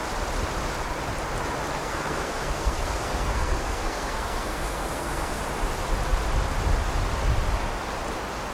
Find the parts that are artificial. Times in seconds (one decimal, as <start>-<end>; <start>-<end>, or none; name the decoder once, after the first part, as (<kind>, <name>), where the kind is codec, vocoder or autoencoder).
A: 1.8-5.4 (codec, SNAC)